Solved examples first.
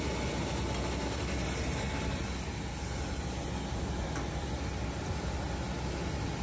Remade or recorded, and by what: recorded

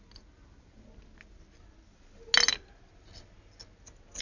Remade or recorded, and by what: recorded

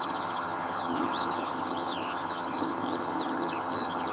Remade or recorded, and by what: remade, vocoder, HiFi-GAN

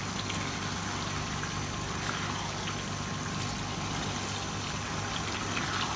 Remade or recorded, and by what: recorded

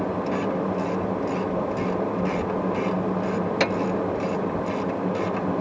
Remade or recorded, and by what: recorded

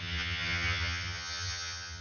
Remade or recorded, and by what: remade, vocoder, HiFi-GAN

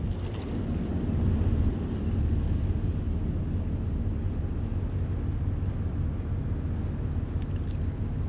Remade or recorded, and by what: recorded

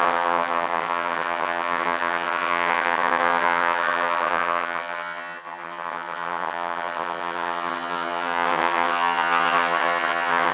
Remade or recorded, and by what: remade, vocoder, HiFi-GAN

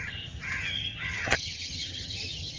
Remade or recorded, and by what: remade, vocoder, HiFi-GAN